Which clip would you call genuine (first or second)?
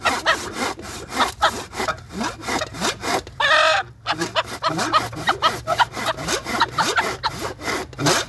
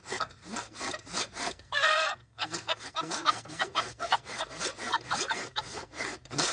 first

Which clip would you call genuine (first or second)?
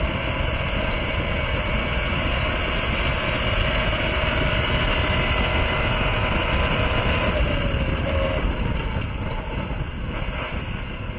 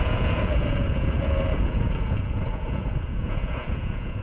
first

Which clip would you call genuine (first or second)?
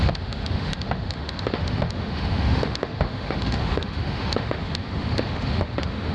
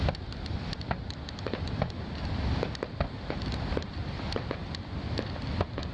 second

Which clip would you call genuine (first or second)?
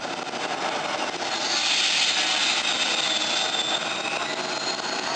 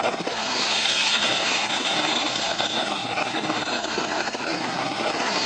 first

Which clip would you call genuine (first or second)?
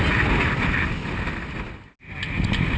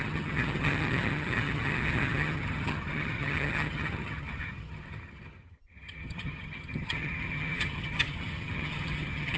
first